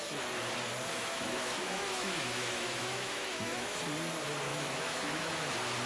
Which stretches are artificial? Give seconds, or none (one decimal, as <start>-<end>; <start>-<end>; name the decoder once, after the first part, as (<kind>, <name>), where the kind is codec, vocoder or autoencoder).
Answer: 1.0-3.8 (autoencoder, DAC-VAE); 4.5-5.5

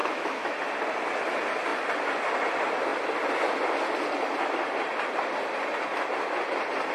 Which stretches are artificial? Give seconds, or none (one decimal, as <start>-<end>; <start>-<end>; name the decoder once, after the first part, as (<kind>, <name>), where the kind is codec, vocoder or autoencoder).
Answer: 0.0-0.5 (autoencoder, DAC-VAE)

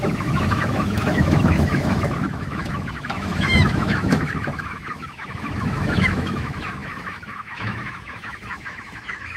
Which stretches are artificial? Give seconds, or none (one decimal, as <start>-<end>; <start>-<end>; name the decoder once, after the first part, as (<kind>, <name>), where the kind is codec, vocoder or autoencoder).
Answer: 0.0-9.4 (autoencoder, DAC-VAE)

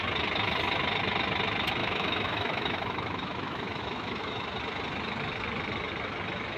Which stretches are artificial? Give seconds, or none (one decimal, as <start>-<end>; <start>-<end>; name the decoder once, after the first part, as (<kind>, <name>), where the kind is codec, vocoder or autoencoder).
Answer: 1.8-4.4 (autoencoder, DAC-VAE)

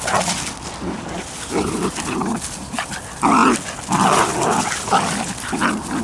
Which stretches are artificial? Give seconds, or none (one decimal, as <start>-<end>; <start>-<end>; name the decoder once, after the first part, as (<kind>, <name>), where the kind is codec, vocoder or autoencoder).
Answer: none

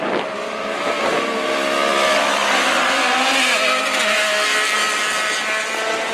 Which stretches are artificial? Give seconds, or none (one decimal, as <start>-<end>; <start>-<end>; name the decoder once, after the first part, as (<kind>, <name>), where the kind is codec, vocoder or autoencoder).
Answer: none

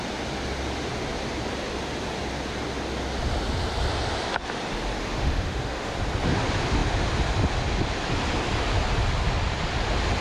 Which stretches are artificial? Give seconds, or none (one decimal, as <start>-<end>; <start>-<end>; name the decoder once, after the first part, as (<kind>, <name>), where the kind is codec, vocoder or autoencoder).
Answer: 5.0-5.9 (autoencoder, DAC-VAE)